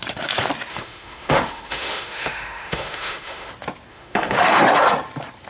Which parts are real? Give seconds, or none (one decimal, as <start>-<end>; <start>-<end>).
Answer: 0.0-0.7; 3.5-3.9; 4.6-5.5